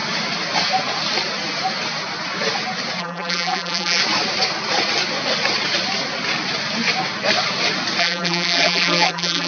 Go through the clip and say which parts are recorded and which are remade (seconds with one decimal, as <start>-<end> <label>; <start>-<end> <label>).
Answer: 0.0-3.0 recorded; 3.0-4.0 remade; 4.0-8.0 recorded; 8.0-9.5 remade